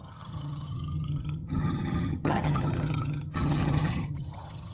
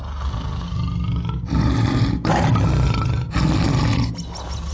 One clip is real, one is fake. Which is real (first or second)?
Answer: second